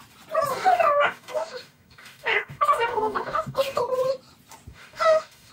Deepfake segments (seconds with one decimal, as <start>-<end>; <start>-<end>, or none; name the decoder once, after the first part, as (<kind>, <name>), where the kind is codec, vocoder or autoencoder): 0.5-3.8 (codec, DAC); 4.7-5.5